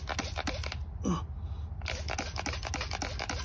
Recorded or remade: recorded